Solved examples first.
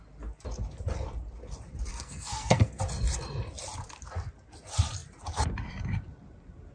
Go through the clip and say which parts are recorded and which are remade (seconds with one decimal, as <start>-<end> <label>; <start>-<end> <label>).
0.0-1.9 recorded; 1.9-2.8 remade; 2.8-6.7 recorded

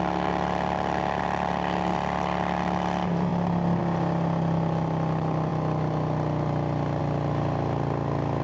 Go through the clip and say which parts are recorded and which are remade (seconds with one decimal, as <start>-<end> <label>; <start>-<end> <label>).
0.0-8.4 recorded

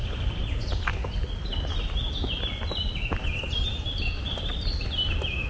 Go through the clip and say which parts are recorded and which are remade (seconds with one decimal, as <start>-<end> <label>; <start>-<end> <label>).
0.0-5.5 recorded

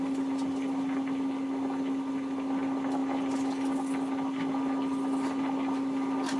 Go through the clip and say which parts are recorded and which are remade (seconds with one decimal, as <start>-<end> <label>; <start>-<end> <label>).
0.0-6.4 recorded

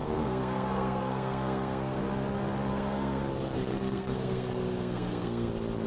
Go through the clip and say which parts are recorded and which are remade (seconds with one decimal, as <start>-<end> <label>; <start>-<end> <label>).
0.0-2.0 remade; 2.0-2.7 recorded; 2.7-3.2 remade; 3.2-3.7 recorded; 3.7-5.5 remade; 5.5-5.9 recorded

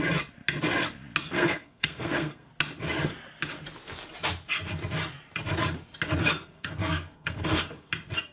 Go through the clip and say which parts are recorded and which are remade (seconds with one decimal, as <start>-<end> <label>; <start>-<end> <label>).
0.0-1.2 recorded; 1.2-2.5 remade; 2.5-6.2 recorded; 6.2-7.9 remade; 7.9-8.3 recorded

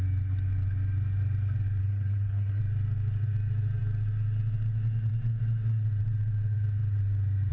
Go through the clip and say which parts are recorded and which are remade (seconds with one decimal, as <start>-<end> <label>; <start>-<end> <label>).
0.0-1.8 recorded; 1.8-2.6 remade; 2.6-7.5 recorded

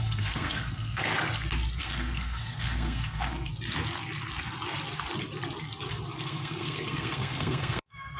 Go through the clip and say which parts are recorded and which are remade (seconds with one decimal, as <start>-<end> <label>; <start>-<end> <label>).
0.0-1.1 remade; 1.1-1.8 recorded; 1.8-3.5 remade; 3.5-6.2 recorded; 6.2-8.2 remade